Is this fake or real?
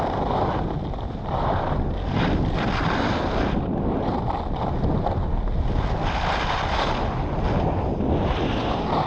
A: real